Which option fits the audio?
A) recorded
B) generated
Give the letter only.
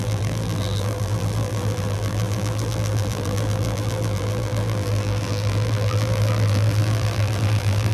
B